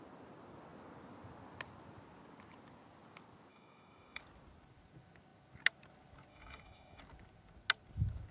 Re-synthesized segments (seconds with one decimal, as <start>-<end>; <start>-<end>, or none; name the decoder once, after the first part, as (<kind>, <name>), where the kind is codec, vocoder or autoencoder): 3.5-4.2 (autoencoder, DAC-VAE); 6.3-7.0